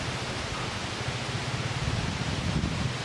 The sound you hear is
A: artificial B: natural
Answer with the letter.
B